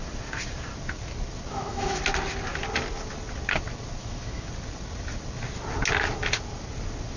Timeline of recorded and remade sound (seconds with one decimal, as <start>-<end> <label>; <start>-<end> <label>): 0.0-1.5 recorded; 1.5-2.0 remade; 2.0-4.0 recorded; 4.0-4.5 remade; 4.5-7.2 recorded